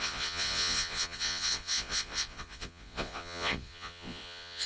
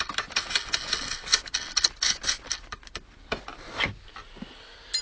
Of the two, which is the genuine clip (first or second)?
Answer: second